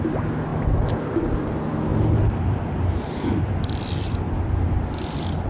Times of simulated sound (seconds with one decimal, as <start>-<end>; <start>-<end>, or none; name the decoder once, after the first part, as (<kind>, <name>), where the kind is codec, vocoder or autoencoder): 1.9-4.4 (vocoder, BigVGAN v2)